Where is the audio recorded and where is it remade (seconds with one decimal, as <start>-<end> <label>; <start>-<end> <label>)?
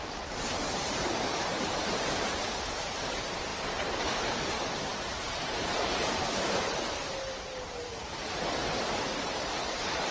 0.0-10.1 remade